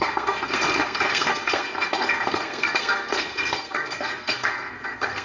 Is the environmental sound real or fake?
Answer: fake